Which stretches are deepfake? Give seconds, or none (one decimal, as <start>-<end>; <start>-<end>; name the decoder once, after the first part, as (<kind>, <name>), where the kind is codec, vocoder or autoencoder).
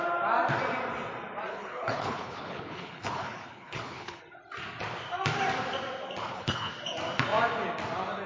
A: 1.5-4.2 (codec, HILCodec); 6.2-6.7